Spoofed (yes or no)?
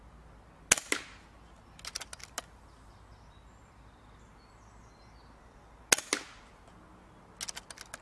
no